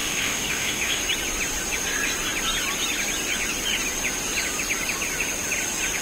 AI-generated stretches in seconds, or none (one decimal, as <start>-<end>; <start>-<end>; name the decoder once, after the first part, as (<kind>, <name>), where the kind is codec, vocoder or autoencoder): 0.0-1.0 (autoencoder, DAC-VAE)